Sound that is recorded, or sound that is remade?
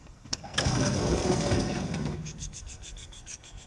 remade